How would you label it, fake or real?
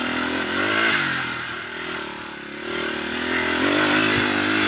real